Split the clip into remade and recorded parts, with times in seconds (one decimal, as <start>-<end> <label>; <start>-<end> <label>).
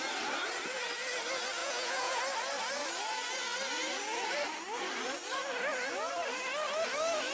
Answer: 0.0-1.6 recorded; 1.6-2.2 remade; 2.2-7.3 recorded